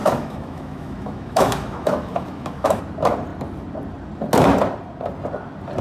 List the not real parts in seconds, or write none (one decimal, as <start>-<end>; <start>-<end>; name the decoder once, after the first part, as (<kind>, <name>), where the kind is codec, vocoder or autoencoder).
0.0-2.8 (autoencoder, DAC-VAE)